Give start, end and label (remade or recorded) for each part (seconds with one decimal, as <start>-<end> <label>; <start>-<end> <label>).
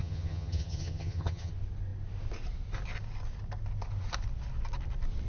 0.0-1.5 remade; 1.5-5.3 recorded